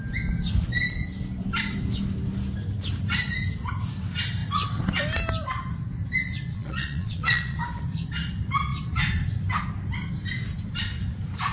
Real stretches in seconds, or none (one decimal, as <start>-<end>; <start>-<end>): 0.0-6.5; 7.6-11.5